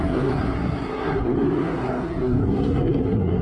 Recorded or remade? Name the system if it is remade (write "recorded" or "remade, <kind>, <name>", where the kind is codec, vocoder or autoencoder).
remade, codec, SNAC